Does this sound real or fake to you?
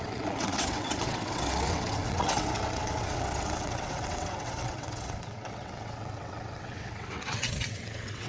fake